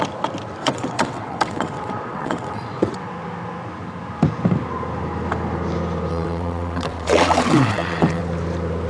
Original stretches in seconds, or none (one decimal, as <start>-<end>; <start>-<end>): 0.0-0.6; 3.1-6.1; 8.2-8.9